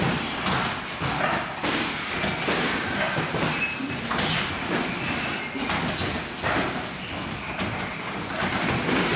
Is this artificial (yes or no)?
no